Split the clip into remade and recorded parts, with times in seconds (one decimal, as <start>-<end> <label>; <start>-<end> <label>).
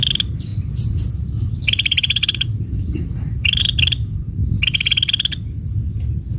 0.0-0.5 recorded; 0.5-3.6 remade; 3.6-6.4 recorded